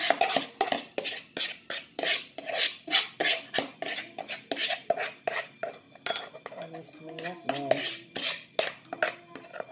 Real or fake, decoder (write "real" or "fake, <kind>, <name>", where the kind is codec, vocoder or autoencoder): real